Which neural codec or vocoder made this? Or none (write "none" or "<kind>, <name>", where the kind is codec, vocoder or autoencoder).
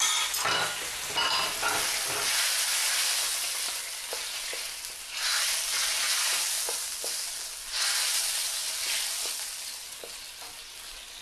none